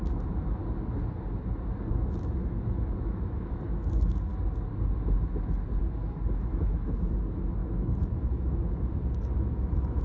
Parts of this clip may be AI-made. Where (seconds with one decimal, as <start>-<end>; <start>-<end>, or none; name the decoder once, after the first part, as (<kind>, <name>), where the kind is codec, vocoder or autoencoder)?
0.0-0.6 (autoencoder, DAC-VAE); 1.9-4.3; 5.8-10.0